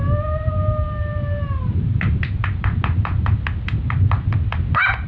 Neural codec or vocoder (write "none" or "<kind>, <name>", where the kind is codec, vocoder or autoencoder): none